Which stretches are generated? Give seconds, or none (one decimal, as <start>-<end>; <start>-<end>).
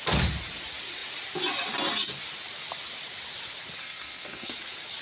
3.8-4.5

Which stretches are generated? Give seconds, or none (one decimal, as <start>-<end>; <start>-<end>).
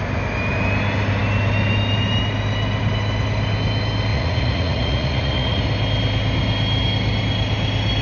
4.1-5.6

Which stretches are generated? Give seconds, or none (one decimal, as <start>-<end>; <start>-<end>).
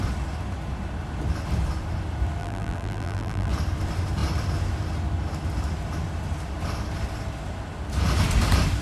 2.4-3.5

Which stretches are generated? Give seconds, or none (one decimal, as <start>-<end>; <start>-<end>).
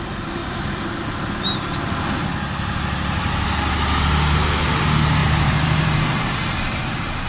5.2-7.3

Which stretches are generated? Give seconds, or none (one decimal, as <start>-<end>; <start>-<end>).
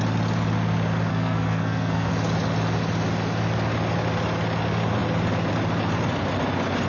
1.1-2.1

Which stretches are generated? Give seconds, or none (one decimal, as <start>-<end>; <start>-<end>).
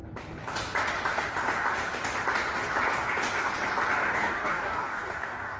4.0-5.6